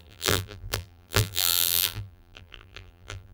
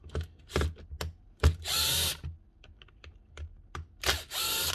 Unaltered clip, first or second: second